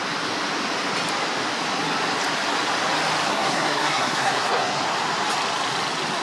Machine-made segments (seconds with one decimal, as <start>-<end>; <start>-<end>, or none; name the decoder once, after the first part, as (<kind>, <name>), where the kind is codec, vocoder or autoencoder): 3.3-4.8 (codec, SNAC)